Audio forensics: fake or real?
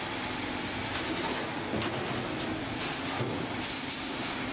real